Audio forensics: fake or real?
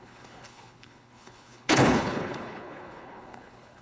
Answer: fake